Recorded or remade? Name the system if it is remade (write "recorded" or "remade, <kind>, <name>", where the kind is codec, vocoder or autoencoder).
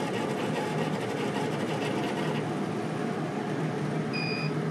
recorded